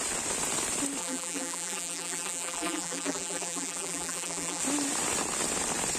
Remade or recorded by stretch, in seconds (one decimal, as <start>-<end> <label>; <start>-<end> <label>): 0.0-1.0 recorded; 1.0-4.6 remade; 4.6-6.0 recorded